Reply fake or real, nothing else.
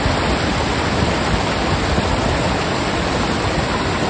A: real